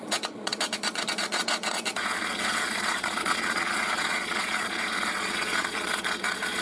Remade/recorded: remade